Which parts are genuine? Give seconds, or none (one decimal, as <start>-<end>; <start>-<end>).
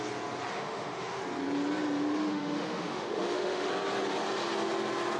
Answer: 0.0-0.5; 1.2-2.3; 3.7-5.2